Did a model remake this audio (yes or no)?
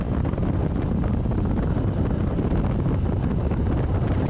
no